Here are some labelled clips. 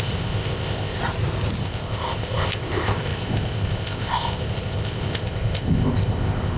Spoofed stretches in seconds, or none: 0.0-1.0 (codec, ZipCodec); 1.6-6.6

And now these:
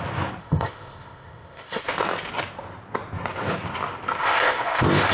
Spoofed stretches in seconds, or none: 0.4-1.9 (codec, ZipCodec); 4.2-5.1

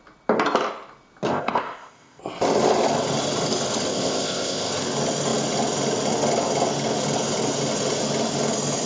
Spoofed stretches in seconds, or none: 1.3-2.2 (codec, ZipCodec); 3.9-4.7

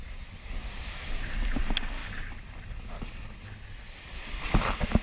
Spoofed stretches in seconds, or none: none

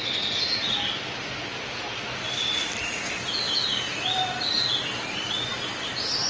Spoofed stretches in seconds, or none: none

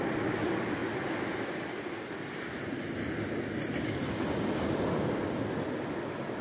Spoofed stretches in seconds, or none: none